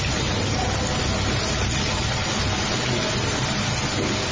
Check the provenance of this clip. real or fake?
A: real